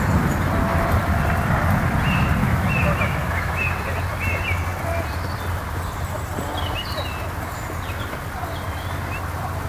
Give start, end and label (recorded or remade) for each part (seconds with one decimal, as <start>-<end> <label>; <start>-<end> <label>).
0.0-2.4 recorded; 2.4-3.6 remade; 3.6-9.7 recorded